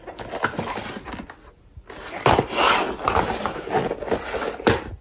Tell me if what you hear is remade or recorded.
recorded